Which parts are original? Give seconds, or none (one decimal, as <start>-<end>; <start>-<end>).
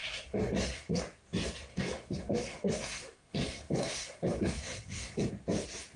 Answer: 1.0-1.7; 5.3-6.0